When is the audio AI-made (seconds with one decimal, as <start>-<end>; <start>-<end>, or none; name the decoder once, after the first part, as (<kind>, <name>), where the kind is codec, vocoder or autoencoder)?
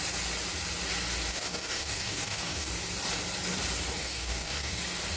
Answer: 1.3-2.7 (codec, DAC); 4.0-4.8